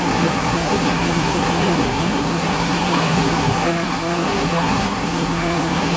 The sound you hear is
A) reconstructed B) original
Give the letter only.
A